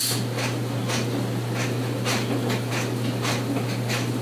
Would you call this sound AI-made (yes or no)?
no